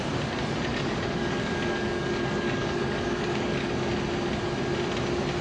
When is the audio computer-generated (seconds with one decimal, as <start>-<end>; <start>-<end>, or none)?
0.7-3.9

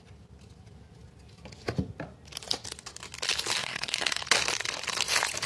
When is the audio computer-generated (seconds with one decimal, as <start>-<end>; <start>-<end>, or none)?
3.6-4.2